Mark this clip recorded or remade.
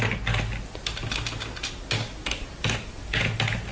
recorded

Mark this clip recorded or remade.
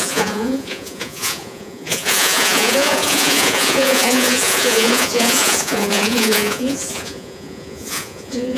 remade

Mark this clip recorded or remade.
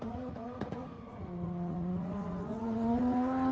remade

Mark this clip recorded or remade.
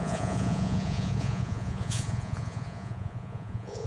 remade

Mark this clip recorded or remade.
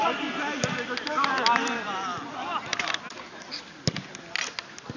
recorded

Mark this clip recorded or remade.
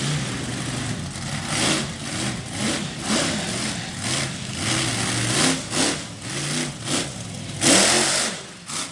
recorded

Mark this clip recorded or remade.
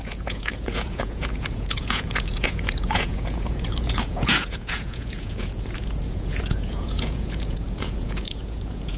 remade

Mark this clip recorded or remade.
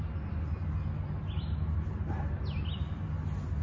recorded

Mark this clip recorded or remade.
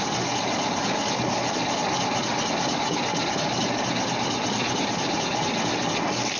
recorded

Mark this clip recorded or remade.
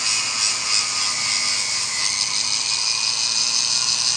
recorded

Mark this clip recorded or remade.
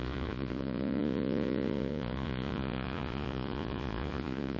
remade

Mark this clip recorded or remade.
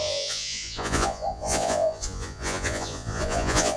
remade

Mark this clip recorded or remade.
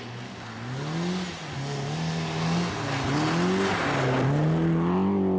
recorded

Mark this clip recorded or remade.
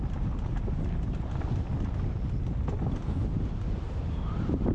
recorded